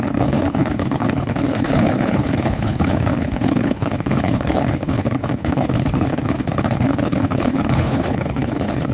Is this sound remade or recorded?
remade